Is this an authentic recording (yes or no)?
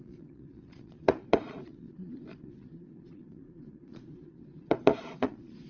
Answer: no